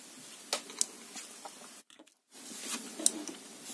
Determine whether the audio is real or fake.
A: real